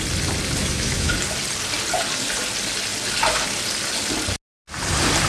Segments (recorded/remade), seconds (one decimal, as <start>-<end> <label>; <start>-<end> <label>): 0.0-0.6 recorded; 0.6-1.1 remade; 1.1-5.3 recorded